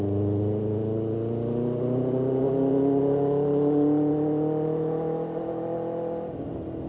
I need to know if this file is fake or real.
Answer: real